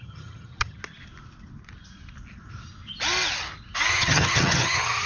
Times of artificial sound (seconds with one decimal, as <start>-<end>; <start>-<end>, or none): 0.0-0.8; 3.9-5.1